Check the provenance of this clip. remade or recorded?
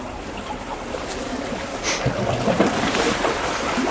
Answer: recorded